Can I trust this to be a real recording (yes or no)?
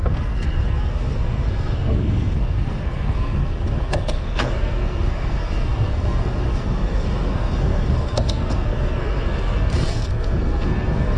no